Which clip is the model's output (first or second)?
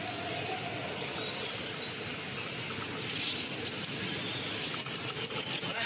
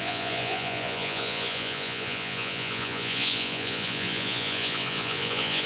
second